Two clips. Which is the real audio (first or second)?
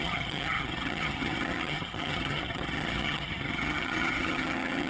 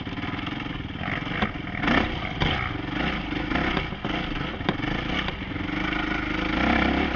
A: second